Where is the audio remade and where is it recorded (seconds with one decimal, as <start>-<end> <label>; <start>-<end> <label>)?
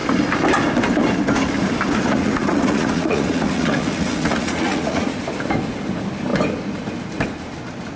0.0-2.0 recorded; 2.0-5.2 remade; 5.2-8.0 recorded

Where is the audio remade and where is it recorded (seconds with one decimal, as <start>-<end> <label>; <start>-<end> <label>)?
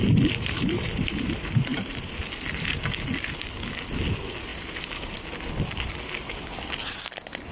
0.0-2.1 remade; 2.1-4.5 recorded; 4.5-5.1 remade; 5.1-7.5 recorded